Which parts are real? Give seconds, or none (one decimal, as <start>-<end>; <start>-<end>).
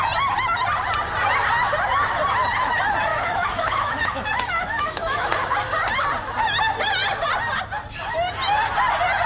0.0-3.1; 5.3-9.3